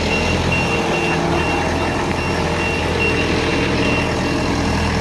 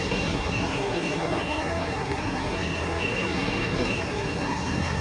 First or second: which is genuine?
first